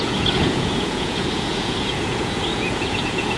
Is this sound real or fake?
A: fake